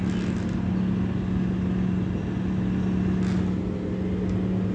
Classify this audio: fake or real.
real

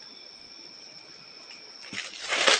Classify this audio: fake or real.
real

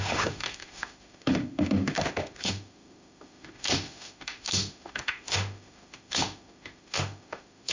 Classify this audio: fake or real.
fake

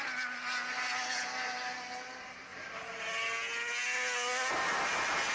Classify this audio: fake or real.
real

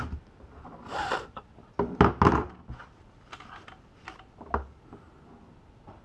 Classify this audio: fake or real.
real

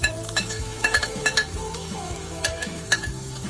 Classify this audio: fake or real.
fake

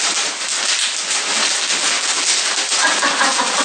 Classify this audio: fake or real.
real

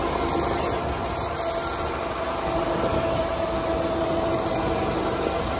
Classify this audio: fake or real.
real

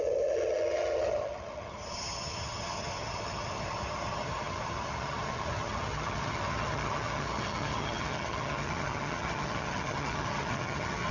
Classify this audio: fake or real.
fake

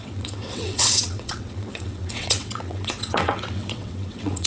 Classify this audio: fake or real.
fake